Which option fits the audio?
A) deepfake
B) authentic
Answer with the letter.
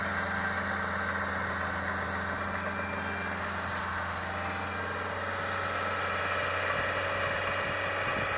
B